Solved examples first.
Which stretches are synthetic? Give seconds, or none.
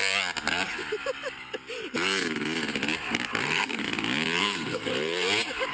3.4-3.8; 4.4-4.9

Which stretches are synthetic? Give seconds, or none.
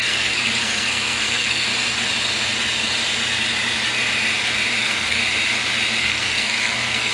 0.0-1.7; 4.8-5.2; 6.0-7.1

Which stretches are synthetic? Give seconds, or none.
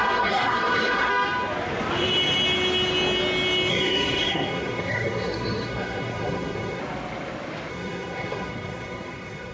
0.0-1.1; 3.7-6.8; 7.7-9.5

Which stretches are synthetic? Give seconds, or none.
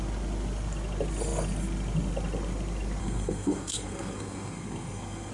3.0-5.3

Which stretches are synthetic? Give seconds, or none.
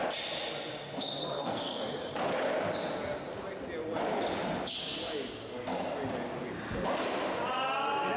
1.2-1.8